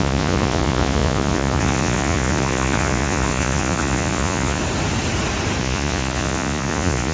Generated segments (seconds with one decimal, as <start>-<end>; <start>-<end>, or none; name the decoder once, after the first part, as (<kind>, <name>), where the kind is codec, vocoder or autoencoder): 0.0-4.6 (vocoder, Vocos); 5.6-7.1